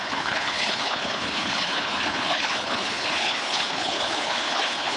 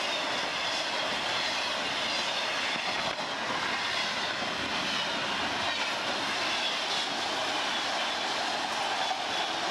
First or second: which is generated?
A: first